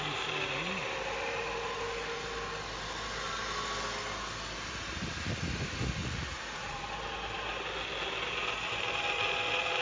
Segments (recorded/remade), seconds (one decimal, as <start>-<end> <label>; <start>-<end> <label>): 0.0-6.0 recorded; 6.0-6.8 remade; 6.8-9.8 recorded